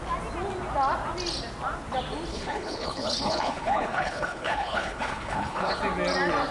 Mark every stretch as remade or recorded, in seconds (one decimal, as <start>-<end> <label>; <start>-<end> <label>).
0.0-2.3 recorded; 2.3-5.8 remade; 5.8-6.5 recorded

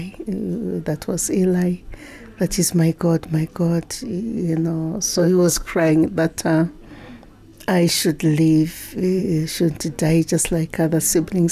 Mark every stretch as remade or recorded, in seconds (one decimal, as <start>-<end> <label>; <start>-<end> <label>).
0.0-5.1 recorded; 5.1-5.9 remade; 5.9-11.5 recorded

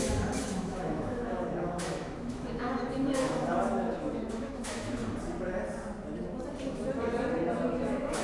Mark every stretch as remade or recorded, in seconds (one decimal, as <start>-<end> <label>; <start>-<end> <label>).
0.0-5.0 remade; 5.0-7.7 recorded; 7.7-8.2 remade